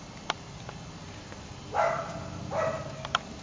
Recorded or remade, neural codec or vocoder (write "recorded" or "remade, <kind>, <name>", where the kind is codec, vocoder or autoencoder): recorded